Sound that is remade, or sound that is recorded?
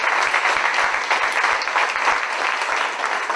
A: recorded